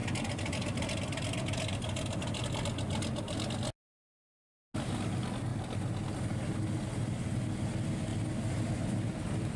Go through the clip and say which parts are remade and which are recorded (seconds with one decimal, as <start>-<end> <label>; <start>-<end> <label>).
0.0-9.6 recorded

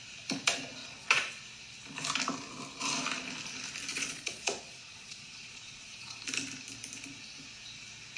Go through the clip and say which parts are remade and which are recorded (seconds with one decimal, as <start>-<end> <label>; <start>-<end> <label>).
0.0-0.8 recorded; 0.8-1.4 remade; 1.4-3.9 recorded; 3.9-6.2 remade; 6.2-8.2 recorded

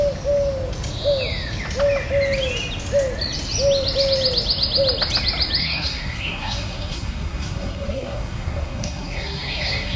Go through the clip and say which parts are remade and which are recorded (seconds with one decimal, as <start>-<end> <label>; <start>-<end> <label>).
0.0-5.6 recorded; 5.6-10.0 remade

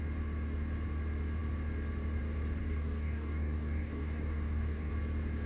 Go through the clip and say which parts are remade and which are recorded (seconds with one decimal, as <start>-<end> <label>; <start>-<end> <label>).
0.0-2.6 recorded; 2.6-4.9 remade; 4.9-5.5 recorded

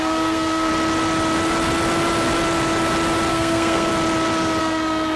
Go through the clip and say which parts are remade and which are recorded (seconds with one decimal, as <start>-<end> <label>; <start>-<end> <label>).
0.0-0.7 remade; 0.7-3.3 recorded; 3.3-3.9 remade; 3.9-4.6 recorded; 4.6-5.2 remade

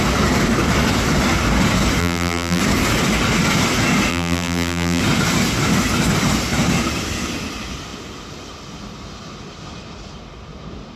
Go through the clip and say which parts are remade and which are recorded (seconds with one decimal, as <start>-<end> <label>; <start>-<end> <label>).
0.0-2.0 recorded; 2.0-2.6 remade; 2.6-4.1 recorded; 4.1-5.0 remade; 5.0-11.0 recorded

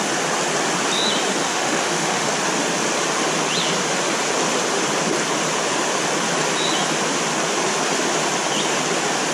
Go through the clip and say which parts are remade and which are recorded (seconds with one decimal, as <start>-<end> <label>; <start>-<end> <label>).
0.0-1.4 recorded; 1.4-2.3 remade; 2.3-9.3 recorded